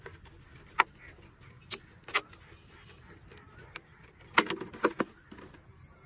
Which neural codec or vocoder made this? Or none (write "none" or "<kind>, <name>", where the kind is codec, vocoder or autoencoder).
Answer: none